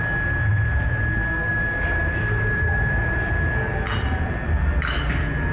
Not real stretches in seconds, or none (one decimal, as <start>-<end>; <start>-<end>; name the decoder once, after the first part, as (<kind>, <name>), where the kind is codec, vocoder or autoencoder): 0.5-1.0 (vocoder, BigVGAN v2); 1.5-3.2; 3.9-5.0